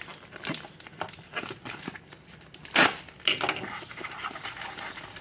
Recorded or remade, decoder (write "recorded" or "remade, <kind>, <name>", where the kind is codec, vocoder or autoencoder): remade, vocoder, BigVGAN v2